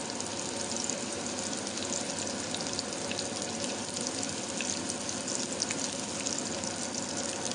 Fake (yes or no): no